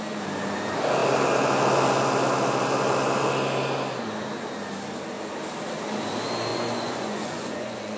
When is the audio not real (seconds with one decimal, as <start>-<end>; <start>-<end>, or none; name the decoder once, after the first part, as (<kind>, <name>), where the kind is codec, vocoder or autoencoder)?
6.5-8.0 (vocoder, Vocos)